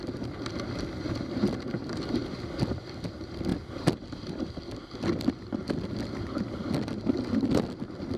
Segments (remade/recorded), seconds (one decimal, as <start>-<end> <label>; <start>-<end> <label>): 0.0-8.2 recorded